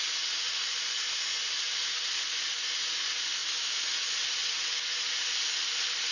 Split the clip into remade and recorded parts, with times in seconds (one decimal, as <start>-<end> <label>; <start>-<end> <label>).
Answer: 0.0-6.1 recorded